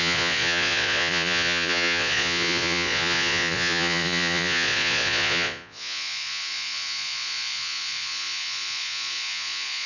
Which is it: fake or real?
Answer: fake